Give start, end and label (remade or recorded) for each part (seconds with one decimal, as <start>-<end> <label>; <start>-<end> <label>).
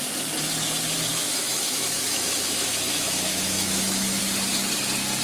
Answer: 0.0-1.1 recorded; 1.1-4.2 remade; 4.2-5.2 recorded